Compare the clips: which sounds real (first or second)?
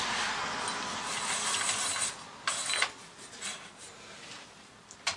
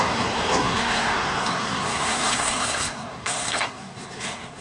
first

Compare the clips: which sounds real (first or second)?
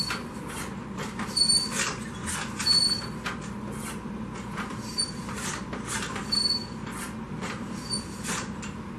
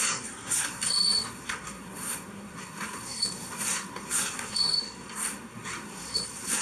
first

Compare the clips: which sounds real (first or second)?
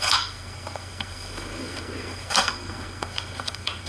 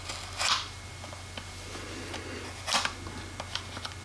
second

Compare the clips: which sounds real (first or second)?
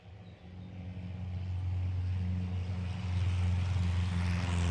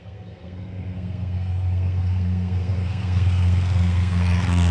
first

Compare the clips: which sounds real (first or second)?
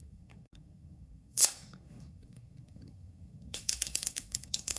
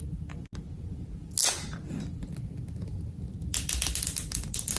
second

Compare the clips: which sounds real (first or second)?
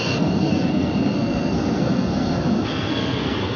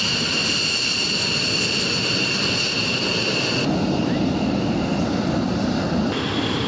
second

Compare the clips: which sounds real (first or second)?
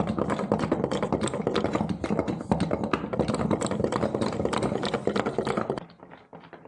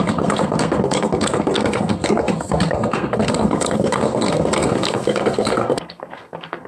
first